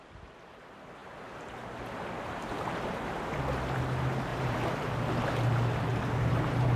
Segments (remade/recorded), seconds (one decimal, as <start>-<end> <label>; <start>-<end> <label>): 0.0-4.3 recorded; 4.3-4.9 remade; 4.9-5.9 recorded; 5.9-6.8 remade